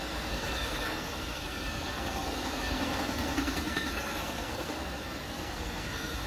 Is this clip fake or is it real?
fake